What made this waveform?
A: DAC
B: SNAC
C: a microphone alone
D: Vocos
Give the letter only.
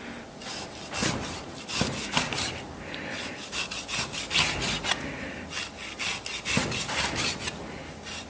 C